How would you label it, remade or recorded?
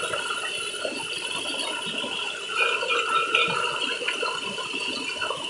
recorded